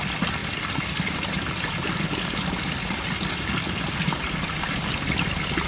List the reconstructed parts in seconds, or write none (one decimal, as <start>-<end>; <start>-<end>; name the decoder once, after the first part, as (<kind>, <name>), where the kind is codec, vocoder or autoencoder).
none